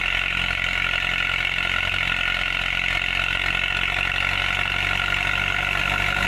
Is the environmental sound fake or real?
real